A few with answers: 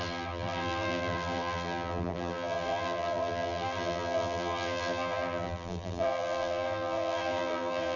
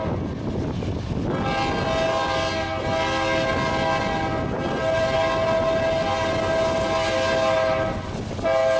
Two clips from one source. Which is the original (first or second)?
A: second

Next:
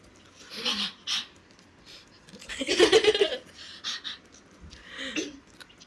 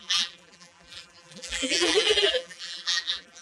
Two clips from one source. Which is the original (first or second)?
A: first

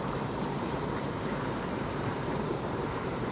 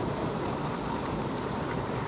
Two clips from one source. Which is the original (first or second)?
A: second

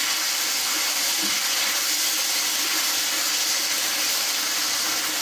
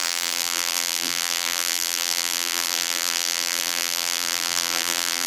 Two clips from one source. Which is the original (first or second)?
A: first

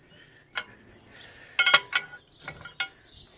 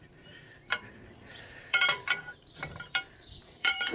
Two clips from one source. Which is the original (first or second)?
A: first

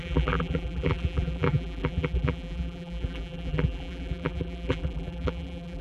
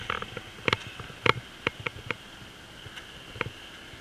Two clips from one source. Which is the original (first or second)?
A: second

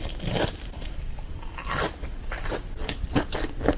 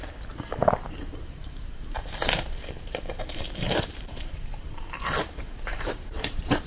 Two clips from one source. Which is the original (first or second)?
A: first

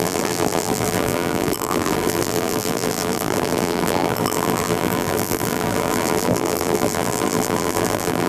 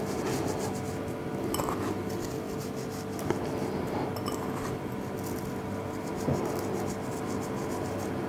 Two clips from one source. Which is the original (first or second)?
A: second